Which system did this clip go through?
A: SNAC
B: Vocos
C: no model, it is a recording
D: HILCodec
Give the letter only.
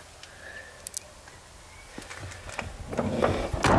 C